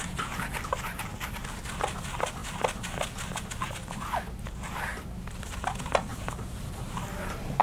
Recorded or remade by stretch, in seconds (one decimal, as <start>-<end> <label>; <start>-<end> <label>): 0.0-6.1 recorded; 6.1-7.6 remade